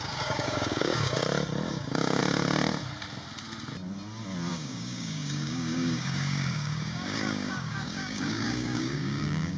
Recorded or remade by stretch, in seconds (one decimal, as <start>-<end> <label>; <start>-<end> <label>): 0.0-1.2 remade; 1.2-1.7 recorded; 1.7-2.2 remade; 2.2-4.5 recorded; 4.5-9.6 remade